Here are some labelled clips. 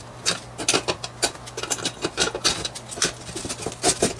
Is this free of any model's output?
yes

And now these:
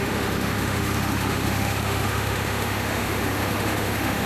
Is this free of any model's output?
no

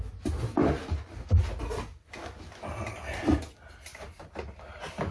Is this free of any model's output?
yes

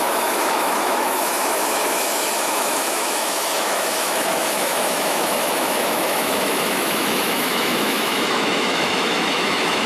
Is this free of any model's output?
no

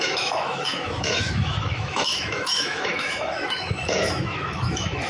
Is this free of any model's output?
no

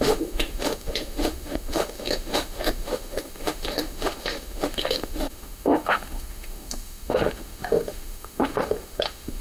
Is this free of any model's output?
no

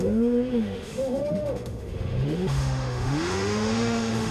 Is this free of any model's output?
no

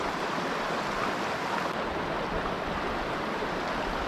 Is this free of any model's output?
yes